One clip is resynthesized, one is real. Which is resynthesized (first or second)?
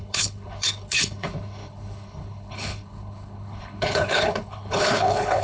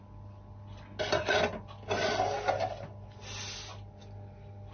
first